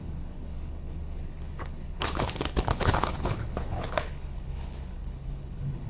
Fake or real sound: fake